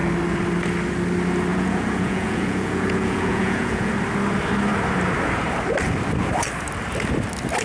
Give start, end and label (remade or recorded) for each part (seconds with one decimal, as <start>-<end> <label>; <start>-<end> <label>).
0.0-1.5 recorded; 1.5-3.9 remade; 3.9-7.6 recorded